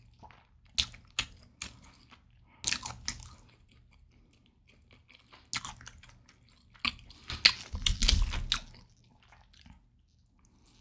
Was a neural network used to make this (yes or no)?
no